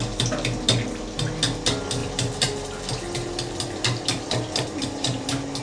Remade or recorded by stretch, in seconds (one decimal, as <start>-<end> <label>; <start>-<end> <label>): 0.0-5.6 recorded

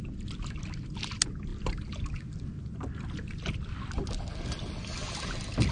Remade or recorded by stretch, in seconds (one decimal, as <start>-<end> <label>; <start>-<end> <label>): 0.0-5.7 recorded

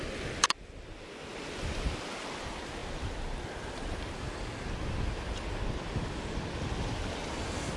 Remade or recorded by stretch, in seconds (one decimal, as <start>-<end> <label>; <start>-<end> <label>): 0.0-7.8 recorded